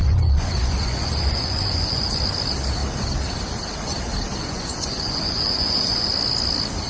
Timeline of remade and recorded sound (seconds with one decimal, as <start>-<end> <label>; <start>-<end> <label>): 0.0-2.2 remade; 2.2-4.4 recorded; 4.4-6.1 remade; 6.1-6.9 recorded